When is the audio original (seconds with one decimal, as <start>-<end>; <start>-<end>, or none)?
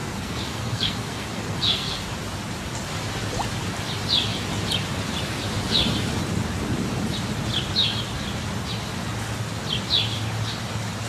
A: 2.0-11.1